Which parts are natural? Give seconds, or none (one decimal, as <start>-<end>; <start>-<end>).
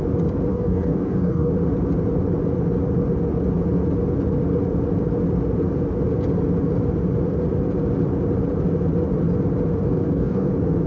0.0-0.5; 1.5-10.0; 10.5-10.9